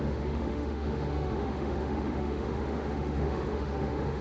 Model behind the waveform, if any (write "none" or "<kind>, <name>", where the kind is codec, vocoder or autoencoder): autoencoder, DAC-VAE